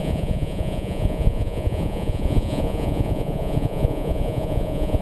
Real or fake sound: fake